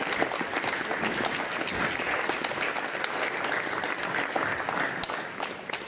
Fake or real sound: real